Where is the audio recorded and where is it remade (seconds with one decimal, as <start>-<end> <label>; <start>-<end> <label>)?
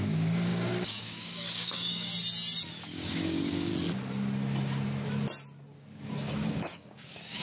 0.0-2.1 remade; 2.1-2.7 recorded; 2.7-3.7 remade; 3.7-6.1 recorded; 6.1-7.4 remade